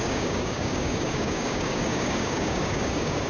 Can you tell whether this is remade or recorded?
remade